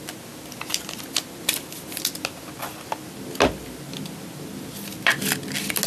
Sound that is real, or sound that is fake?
real